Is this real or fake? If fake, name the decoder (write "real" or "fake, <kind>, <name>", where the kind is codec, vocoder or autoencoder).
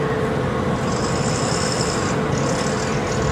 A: real